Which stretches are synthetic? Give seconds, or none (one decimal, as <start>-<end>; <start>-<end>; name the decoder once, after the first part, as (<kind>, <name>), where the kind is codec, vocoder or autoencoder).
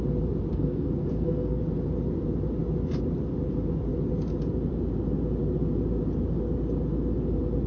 0.5-1.6 (codec, SNAC)